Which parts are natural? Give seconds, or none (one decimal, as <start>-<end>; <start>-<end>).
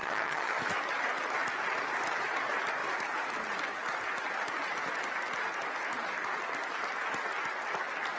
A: 0.6-8.2